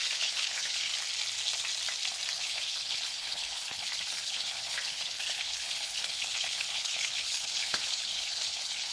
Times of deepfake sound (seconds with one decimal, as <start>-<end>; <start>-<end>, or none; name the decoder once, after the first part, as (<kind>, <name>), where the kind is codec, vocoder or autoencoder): 0.0-0.9 (codec, HILCodec); 2.3-8.9